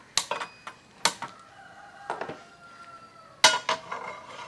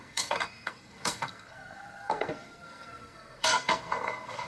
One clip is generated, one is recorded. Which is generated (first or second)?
second